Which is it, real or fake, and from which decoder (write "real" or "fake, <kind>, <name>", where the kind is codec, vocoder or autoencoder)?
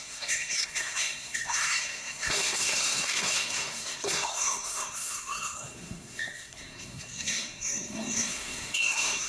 fake, codec, SNAC